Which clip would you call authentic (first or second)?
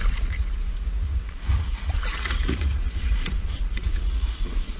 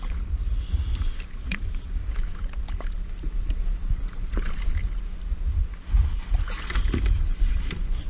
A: second